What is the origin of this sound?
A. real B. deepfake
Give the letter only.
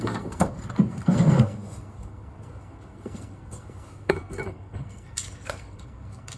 B